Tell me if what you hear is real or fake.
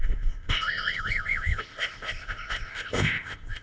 fake